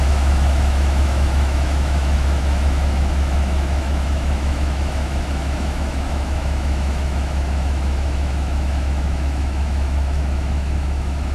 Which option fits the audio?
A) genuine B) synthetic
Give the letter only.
B